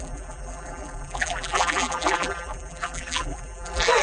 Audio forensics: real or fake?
fake